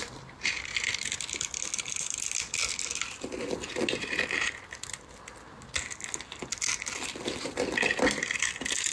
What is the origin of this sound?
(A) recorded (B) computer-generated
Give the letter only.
A